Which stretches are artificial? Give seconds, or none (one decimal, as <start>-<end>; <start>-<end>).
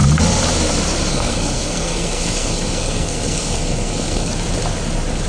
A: 1.1-4.3